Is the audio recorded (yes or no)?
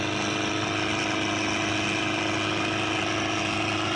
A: yes